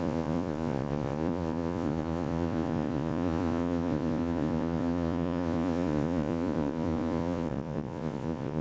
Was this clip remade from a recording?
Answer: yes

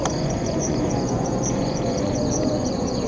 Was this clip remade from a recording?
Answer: yes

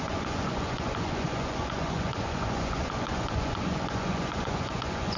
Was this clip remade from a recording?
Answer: yes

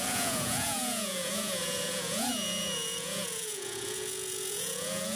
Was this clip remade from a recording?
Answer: yes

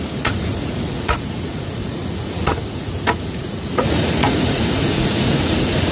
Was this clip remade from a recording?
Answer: yes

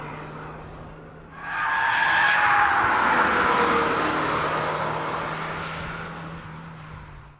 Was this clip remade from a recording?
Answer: no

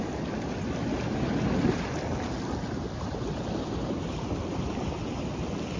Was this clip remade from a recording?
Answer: no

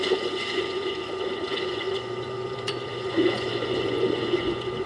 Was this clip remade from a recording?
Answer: yes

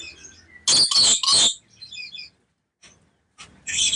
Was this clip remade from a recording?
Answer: no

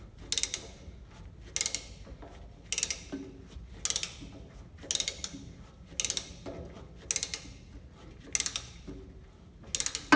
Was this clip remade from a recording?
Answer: no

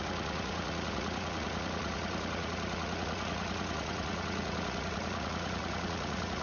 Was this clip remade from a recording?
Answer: yes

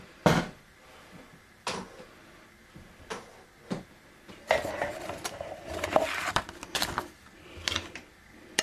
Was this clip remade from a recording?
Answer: no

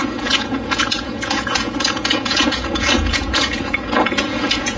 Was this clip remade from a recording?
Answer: yes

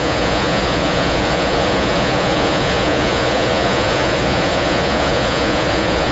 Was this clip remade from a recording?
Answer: yes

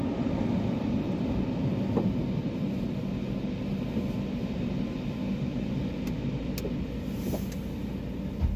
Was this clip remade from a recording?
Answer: no